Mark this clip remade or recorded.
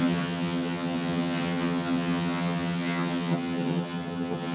remade